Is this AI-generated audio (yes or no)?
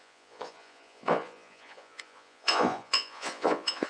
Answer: yes